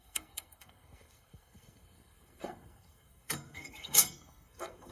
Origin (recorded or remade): remade